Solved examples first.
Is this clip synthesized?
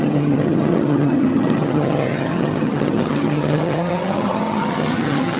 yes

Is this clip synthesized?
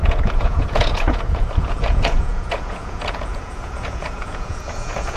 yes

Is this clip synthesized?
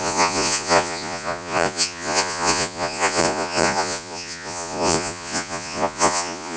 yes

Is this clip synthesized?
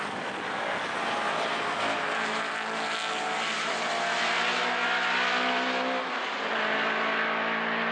no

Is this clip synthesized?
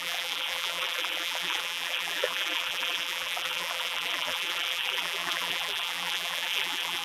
yes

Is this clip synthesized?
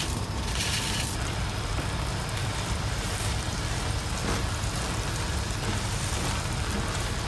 no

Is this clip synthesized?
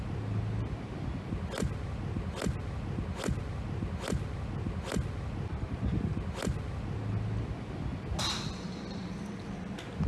no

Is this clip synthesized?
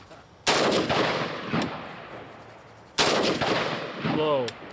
no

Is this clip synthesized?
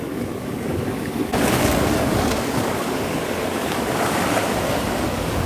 yes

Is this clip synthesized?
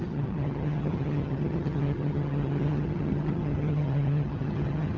yes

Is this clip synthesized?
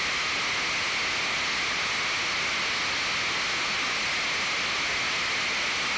no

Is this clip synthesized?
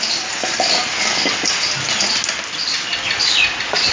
no